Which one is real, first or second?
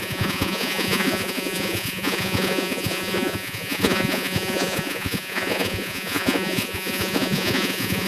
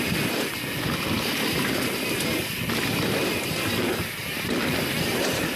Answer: second